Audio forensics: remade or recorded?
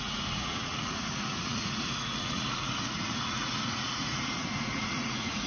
remade